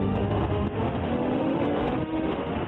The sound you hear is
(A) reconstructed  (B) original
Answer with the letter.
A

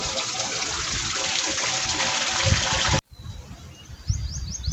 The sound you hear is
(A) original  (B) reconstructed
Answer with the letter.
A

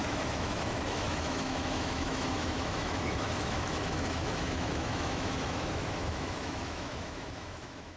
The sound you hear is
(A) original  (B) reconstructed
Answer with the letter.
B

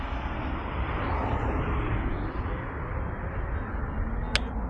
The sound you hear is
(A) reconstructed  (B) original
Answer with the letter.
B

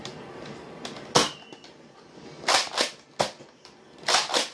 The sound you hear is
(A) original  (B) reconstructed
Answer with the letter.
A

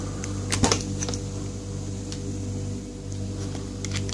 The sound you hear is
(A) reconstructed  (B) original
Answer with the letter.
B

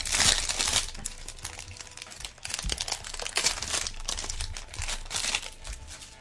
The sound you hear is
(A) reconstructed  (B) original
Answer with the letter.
B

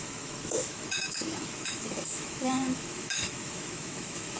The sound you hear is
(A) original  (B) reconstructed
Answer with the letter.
B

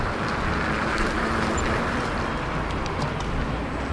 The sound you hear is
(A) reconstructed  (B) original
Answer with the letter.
B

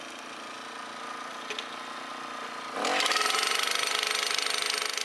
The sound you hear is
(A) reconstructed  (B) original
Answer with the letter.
B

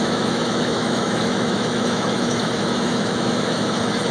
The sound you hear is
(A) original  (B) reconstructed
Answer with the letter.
B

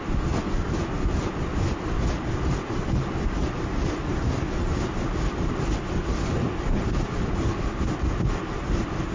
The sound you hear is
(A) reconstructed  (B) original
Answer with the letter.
B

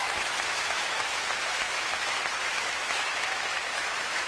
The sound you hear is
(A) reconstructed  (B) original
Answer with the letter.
A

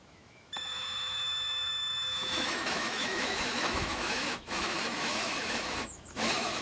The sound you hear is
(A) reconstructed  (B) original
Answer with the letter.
A